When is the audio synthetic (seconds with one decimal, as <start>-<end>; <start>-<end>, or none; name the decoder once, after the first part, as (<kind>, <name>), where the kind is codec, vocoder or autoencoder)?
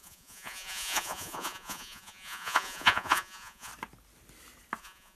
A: 0.0-3.7 (vocoder, Vocos); 4.8-5.2